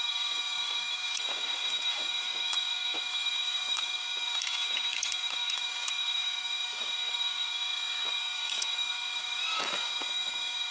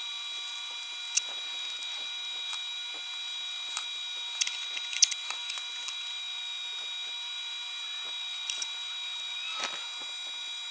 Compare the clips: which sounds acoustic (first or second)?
second